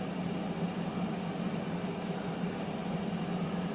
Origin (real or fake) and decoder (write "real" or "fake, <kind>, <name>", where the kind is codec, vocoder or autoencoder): real